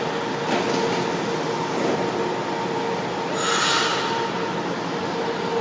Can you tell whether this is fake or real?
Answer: real